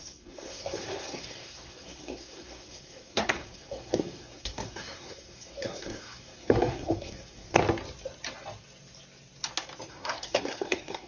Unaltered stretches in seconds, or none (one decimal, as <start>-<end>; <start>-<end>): 7.6-9.9

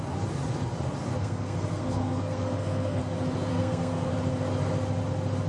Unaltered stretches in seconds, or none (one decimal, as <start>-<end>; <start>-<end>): 0.0-1.2; 3.0-3.5; 4.1-5.5

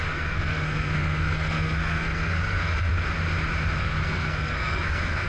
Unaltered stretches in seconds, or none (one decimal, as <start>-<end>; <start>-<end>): 2.9-3.8

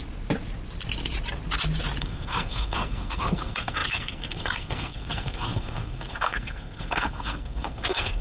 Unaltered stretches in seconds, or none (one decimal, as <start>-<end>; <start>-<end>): 0.0-2.0